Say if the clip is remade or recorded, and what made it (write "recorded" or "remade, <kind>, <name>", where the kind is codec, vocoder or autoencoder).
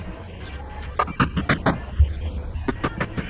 recorded